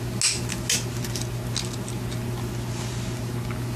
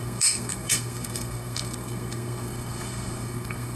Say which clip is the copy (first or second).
second